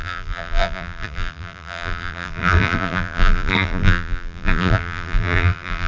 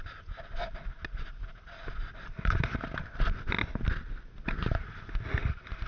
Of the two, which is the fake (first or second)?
first